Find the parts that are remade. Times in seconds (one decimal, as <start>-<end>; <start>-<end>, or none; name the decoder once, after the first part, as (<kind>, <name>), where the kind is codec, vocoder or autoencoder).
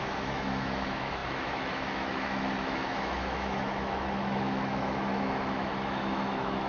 0.0-6.7 (autoencoder, DAC-VAE)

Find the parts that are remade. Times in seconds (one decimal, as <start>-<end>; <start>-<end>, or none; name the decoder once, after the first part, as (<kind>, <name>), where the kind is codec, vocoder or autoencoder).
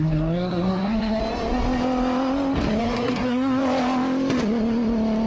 0.0-1.2 (codec, SNAC); 2.8-3.6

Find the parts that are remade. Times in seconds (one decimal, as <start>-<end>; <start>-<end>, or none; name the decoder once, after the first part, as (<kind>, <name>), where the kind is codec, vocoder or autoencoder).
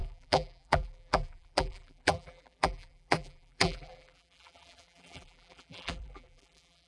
0.0-6.9 (vocoder, BigVGAN v2)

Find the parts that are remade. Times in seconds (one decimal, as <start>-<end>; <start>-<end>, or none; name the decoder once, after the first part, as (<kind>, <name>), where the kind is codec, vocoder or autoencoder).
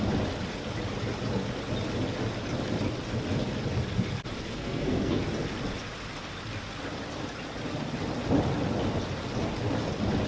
4.5-5.2 (codec, SNAC)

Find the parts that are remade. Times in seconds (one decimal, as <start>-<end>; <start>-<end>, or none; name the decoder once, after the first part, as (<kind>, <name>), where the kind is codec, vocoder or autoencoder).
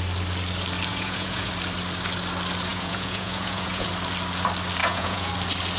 0.9-1.5 (vocoder, Vocos); 2.7-3.9; 4.8-5.3